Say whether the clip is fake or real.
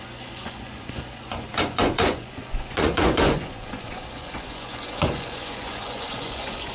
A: fake